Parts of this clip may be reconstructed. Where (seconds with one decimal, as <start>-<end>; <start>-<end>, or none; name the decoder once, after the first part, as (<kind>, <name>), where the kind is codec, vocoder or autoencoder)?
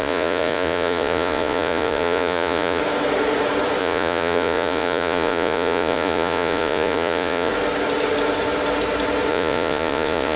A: 0.0-2.8 (vocoder, Vocos); 3.8-7.5; 9.3-10.4